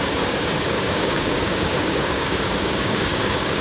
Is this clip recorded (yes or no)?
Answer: no